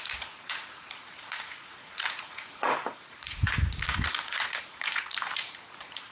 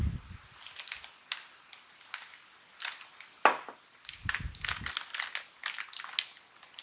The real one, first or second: second